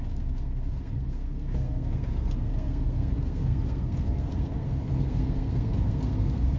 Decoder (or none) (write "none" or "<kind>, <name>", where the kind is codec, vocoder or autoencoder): codec, SNAC